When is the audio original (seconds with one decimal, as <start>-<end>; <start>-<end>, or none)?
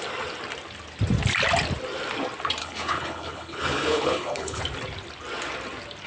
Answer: 0.0-2.6; 4.6-6.1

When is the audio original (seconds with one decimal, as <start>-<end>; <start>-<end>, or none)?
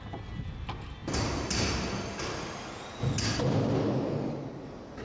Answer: 0.0-5.0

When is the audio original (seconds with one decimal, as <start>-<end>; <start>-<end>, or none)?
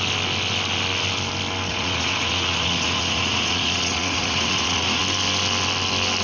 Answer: 0.0-1.7; 5.0-6.2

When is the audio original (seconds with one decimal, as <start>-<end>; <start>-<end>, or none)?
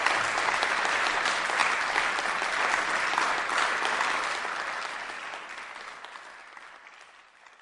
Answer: 0.0-7.6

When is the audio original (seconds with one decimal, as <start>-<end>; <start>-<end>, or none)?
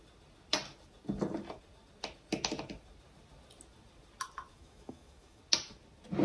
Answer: 0.0-4.5; 5.4-6.2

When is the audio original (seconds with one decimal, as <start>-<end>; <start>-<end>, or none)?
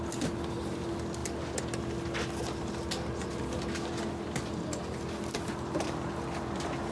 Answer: 0.0-6.9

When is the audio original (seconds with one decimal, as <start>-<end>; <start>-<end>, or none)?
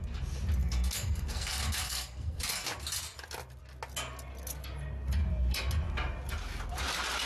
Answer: 0.0-0.6; 2.4-7.3